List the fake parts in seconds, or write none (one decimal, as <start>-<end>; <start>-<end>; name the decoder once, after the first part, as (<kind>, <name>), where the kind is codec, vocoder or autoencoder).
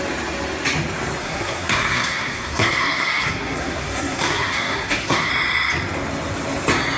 1.2-5.3 (codec, SNAC)